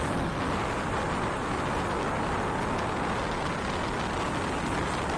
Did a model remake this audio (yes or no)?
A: no